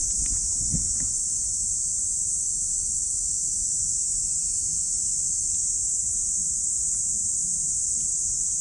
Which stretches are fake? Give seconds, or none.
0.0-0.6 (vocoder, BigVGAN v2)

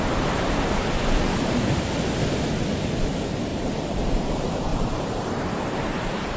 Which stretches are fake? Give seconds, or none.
3.5-4.3 (vocoder, BigVGAN v2); 4.7-6.0

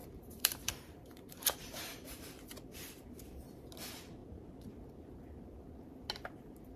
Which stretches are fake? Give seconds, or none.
0.0-2.2 (vocoder, BigVGAN v2)

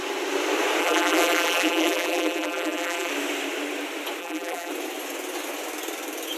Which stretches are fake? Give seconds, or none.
0.8-3.1 (vocoder, BigVGAN v2); 4.2-4.7